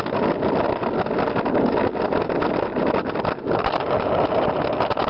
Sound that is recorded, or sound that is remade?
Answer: recorded